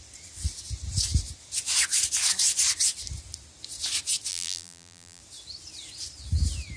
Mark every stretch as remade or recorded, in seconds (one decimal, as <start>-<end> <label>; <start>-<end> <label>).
0.0-4.3 recorded; 4.3-5.2 remade; 5.2-6.8 recorded